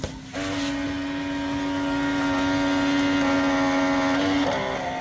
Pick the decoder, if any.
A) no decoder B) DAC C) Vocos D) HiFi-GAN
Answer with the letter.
A